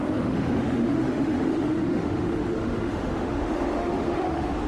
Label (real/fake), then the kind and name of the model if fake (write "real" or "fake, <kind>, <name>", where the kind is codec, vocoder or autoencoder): fake, autoencoder, DAC-VAE